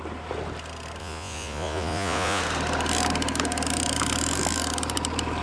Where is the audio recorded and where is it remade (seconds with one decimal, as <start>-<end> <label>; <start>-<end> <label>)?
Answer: 0.0-1.0 recorded; 1.0-2.4 remade; 2.4-5.4 recorded